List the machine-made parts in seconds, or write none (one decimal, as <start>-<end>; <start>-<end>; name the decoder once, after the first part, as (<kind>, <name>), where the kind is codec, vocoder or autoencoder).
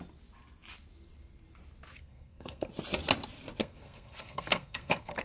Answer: 2.0-2.7 (codec, SNAC); 3.6-5.2